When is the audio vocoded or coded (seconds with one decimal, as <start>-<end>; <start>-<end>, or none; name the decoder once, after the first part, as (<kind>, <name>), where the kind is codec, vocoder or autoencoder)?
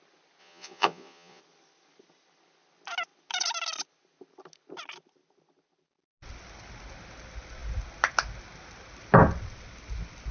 0.4-1.4 (vocoder, Vocos)